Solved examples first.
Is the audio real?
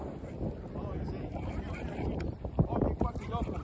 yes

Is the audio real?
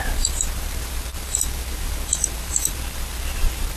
no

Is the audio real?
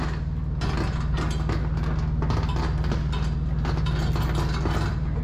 yes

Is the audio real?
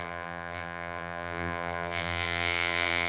no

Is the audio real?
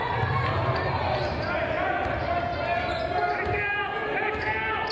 yes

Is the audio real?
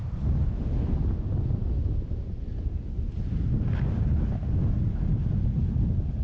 yes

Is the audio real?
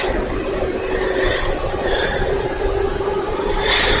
no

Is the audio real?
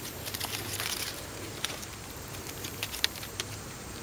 no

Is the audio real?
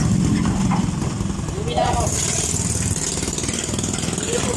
yes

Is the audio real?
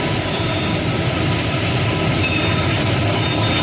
yes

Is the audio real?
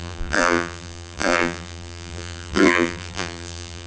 no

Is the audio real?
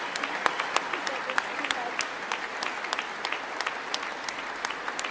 no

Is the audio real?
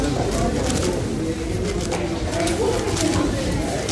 yes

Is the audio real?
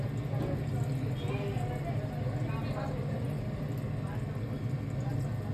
yes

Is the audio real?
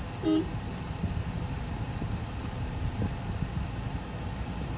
yes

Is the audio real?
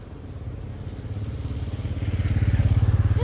yes